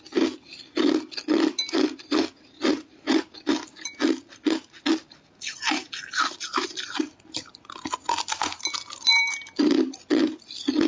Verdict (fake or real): real